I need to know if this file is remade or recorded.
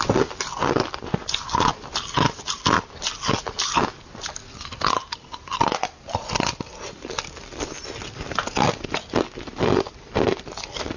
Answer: recorded